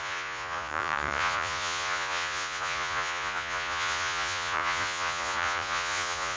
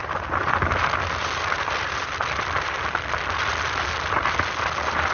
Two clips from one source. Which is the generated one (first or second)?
first